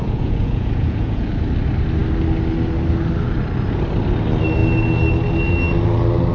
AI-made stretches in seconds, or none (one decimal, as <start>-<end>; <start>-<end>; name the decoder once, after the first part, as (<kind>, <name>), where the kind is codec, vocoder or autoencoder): 0.0-1.3 (vocoder, Vocos)